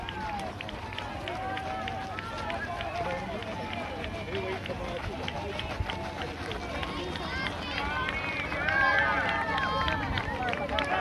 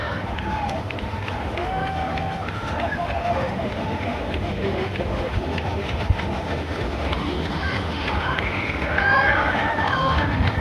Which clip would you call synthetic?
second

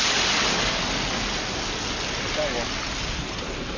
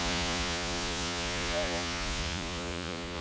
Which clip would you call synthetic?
second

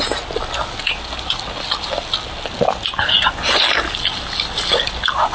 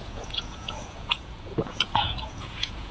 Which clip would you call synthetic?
second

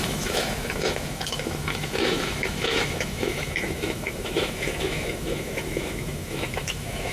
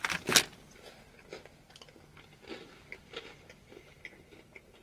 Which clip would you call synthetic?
first